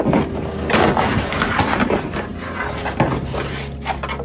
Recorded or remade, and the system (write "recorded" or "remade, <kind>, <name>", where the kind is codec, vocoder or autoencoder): recorded